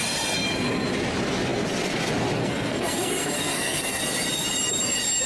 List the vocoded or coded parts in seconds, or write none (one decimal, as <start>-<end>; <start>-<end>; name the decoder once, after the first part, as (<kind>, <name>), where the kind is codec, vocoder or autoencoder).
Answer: 2.4-4.0 (codec, SNAC)